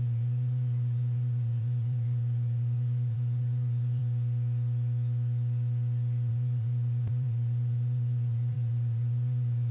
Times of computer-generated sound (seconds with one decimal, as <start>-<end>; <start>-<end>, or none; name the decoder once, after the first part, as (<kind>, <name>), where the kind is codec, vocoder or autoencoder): 0.0-4.0 (vocoder, Vocos); 6.3-9.7